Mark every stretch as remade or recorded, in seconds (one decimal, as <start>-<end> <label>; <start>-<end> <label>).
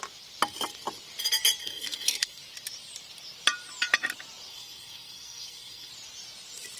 0.0-1.6 recorded; 1.6-2.4 remade; 2.4-4.5 recorded; 4.5-5.9 remade; 5.9-6.8 recorded